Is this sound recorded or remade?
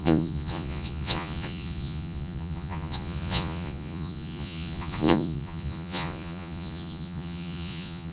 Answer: remade